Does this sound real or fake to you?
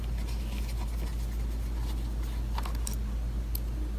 real